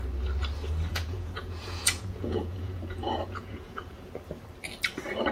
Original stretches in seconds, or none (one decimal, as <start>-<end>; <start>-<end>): 0.0-0.9; 4.1-5.3